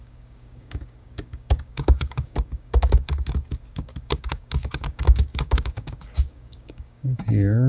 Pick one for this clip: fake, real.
fake